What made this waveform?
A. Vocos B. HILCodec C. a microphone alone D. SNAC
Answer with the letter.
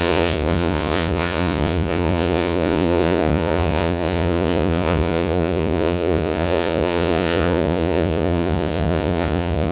A